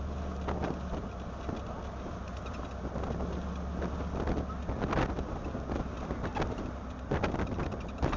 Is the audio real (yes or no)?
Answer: yes